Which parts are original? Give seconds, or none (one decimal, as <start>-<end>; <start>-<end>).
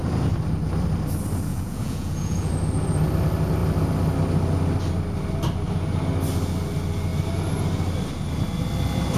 0.0-1.5; 2.5-9.2